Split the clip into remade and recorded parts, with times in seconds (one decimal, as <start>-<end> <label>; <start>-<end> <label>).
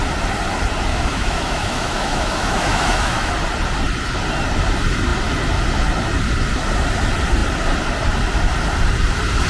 0.0-0.9 recorded; 0.9-3.3 remade; 3.3-9.5 recorded